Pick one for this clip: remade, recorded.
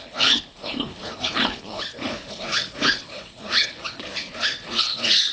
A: remade